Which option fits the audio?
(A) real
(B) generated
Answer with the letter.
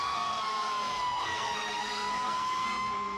B